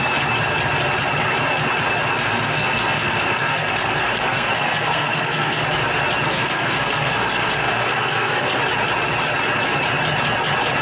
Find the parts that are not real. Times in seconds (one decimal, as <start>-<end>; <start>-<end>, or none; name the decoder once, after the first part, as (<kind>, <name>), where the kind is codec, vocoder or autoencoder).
2.2-5.6 (codec, SNAC); 6.3-8.6